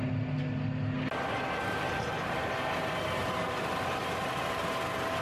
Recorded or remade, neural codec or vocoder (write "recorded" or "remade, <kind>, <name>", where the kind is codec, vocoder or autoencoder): recorded